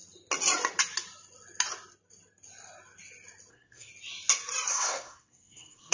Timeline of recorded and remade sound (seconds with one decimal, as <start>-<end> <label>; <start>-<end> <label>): 0.0-3.5 recorded; 3.5-3.9 remade; 3.9-4.7 recorded; 4.7-5.9 remade